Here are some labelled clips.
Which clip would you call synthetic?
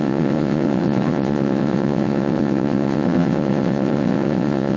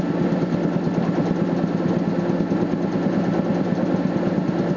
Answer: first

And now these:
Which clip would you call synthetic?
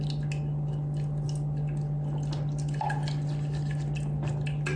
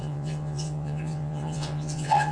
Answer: second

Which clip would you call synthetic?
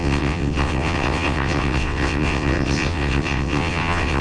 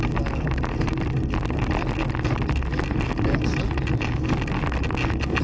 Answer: first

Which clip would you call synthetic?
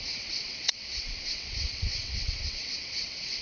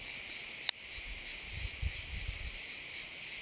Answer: first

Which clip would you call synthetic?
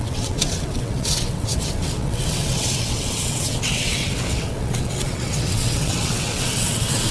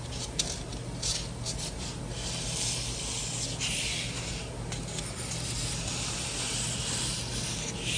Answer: first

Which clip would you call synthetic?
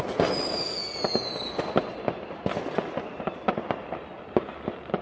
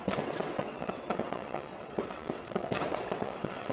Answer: second